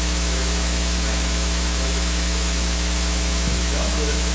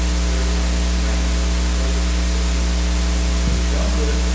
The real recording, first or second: second